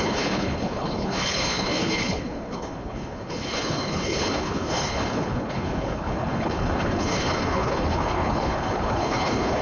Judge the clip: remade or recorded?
remade